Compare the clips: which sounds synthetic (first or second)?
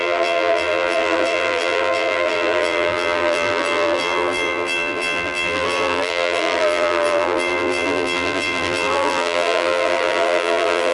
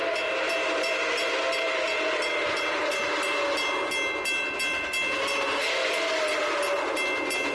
first